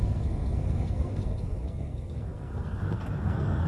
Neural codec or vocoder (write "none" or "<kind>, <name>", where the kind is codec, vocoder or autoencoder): codec, SNAC